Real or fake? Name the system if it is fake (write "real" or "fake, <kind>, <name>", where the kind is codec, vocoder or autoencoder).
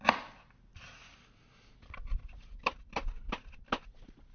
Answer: real